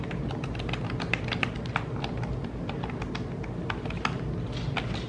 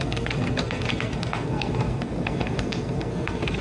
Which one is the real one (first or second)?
first